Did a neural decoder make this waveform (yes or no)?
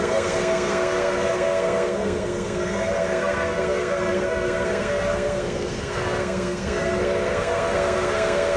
yes